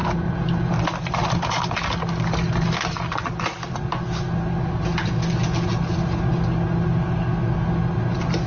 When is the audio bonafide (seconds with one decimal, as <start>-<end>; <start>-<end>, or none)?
0.0-8.5